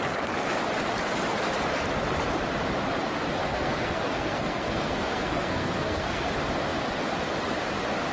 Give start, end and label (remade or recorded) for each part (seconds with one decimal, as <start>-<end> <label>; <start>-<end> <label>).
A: 0.0-3.4 recorded; 3.4-6.3 remade; 6.3-8.1 recorded

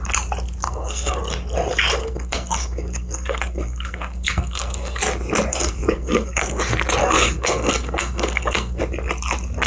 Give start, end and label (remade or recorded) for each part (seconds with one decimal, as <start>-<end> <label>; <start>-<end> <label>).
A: 0.0-0.6 recorded; 0.6-1.2 remade; 1.2-2.0 recorded; 2.0-5.0 remade; 5.0-5.5 recorded; 5.5-6.6 remade; 6.6-7.0 recorded; 7.0-8.8 remade; 8.8-9.7 recorded

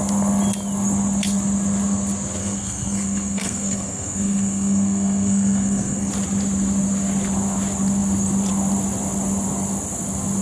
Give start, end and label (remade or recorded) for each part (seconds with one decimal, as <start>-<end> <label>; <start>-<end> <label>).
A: 0.0-2.4 recorded; 2.4-6.1 remade; 6.1-10.4 recorded

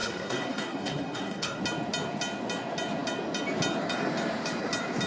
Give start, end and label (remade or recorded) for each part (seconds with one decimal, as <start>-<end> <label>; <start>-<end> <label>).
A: 0.0-1.6 remade; 1.6-5.1 recorded

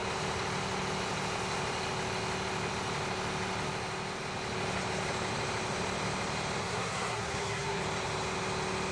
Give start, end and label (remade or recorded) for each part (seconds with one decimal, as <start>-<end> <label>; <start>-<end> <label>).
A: 0.0-6.6 recorded; 6.6-7.8 remade; 7.8-8.9 recorded